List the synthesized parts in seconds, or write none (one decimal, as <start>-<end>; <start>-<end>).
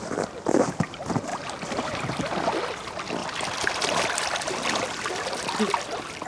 none